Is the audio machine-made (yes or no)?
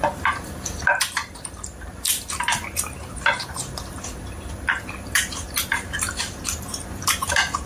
yes